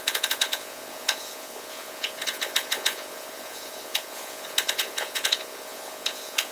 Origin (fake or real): fake